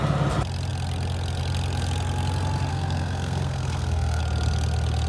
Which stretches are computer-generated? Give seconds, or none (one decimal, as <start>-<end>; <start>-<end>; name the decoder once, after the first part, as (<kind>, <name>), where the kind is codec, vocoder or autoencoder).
2.7-4.2 (codec, SNAC)